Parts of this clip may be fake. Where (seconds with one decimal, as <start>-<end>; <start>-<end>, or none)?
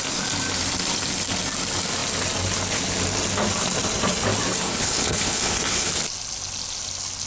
4.5-5.9